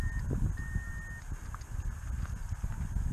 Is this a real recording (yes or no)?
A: yes